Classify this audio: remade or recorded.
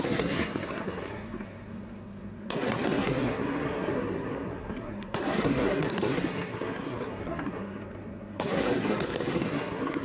remade